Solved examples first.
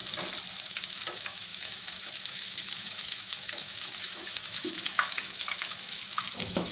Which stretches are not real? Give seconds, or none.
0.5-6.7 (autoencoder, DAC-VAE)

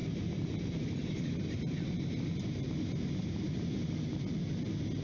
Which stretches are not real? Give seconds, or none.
0.0-3.0 (vocoder, BigVGAN v2)

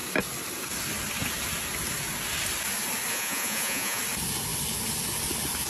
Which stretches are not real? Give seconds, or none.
3.1-4.0 (vocoder, Vocos)

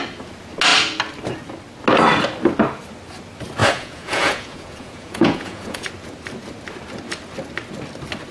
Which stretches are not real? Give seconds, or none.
3.6-5.9 (vocoder, Vocos)